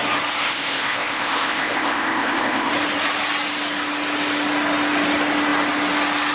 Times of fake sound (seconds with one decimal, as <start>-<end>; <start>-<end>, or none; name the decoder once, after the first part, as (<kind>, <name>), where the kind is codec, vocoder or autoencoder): 0.4-2.7 (codec, ZipCodec)